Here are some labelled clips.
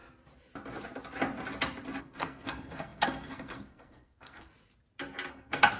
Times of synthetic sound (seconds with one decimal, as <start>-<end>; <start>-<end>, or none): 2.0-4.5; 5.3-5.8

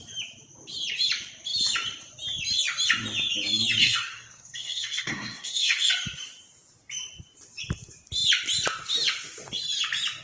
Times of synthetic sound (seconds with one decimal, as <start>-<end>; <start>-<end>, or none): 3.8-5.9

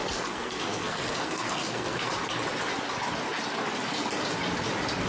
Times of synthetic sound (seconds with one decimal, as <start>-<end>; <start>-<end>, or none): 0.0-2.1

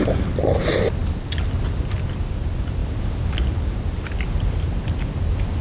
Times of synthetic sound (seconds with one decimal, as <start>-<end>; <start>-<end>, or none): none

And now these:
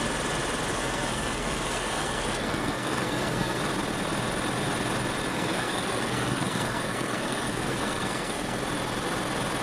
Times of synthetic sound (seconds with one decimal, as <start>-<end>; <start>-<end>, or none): 0.7-3.6; 5.3-8.6

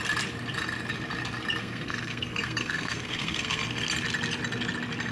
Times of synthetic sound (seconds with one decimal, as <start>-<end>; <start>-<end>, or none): 1.6-3.6

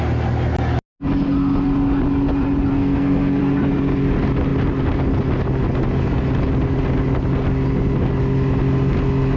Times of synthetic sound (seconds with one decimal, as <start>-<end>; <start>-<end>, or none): 2.7-3.4